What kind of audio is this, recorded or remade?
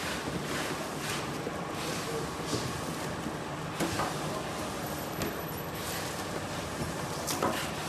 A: recorded